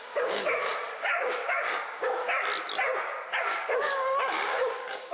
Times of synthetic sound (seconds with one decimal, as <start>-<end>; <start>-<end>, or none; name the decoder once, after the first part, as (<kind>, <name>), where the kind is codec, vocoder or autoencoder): 0.0-2.2 (codec, DAC); 3.4-5.1